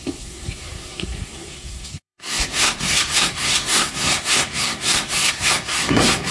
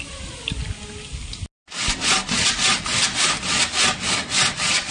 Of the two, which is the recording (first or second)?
second